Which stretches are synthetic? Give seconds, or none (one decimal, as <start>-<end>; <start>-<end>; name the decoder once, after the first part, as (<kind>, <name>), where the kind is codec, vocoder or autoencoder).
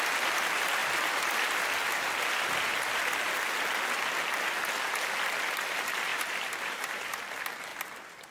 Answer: 6.1-7.0 (vocoder, BigVGAN v2)